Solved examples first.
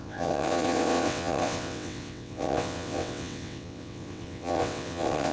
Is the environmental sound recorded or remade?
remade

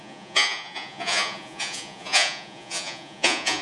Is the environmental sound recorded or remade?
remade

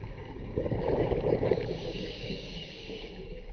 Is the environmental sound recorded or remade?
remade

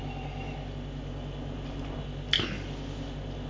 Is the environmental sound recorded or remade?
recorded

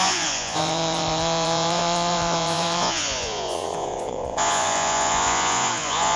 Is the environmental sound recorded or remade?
remade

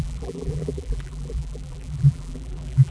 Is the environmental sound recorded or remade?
remade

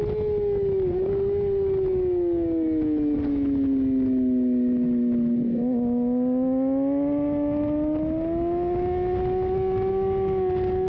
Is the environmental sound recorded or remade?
recorded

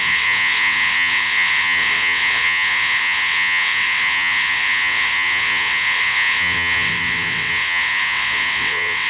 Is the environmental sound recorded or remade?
remade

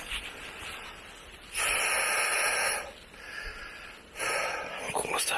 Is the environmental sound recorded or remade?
recorded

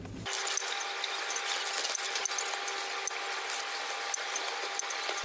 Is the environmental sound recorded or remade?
recorded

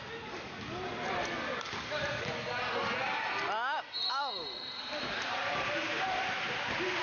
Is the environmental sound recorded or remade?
recorded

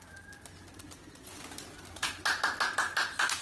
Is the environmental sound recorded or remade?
recorded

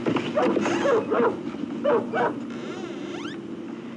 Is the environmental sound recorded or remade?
recorded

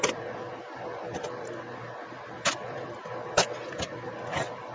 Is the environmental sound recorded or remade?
recorded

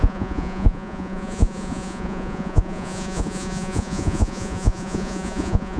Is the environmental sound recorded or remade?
remade